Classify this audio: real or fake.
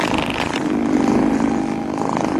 real